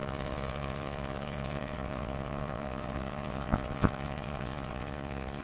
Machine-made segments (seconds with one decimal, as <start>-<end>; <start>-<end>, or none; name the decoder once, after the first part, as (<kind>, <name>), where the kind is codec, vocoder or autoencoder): 0.0-5.4 (vocoder, WaveNeXt)